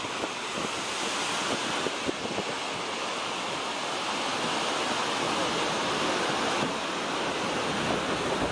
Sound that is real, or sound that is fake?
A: real